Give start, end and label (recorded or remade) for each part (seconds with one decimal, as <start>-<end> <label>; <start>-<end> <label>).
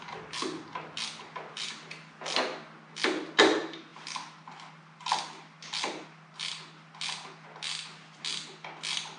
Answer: 0.0-9.2 recorded